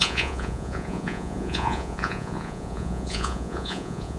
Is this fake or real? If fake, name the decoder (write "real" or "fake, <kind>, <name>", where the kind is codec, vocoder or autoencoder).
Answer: fake, vocoder, Vocos